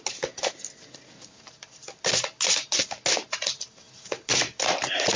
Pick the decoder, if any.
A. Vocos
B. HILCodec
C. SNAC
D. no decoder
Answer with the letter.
D